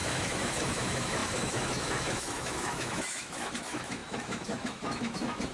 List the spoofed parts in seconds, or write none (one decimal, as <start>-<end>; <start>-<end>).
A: 0.0-5.5